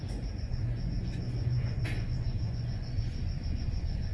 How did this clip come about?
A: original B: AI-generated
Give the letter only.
B